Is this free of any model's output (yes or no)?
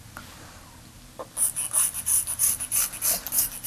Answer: yes